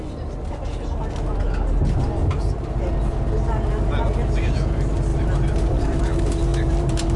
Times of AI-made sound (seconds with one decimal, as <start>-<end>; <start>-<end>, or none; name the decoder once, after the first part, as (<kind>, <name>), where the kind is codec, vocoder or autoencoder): 2.2-2.7 (vocoder, BigVGAN v2); 5.1-6.0; 6.5-7.2

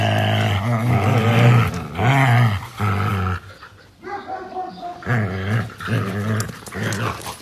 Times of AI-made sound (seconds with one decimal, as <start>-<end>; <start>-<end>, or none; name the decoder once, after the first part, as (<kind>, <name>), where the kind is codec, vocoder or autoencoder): none

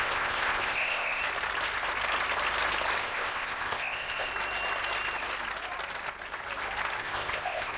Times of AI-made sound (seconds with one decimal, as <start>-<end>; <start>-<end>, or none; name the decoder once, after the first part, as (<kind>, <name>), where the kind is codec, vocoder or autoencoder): 0.0-1.2 (codec, ZipCodec); 3.0-4.3; 7.0-7.8